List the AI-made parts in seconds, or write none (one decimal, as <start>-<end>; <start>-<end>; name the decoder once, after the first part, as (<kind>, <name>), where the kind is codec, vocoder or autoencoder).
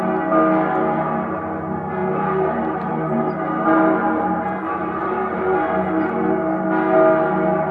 2.0-6.1 (vocoder, BigVGAN v2)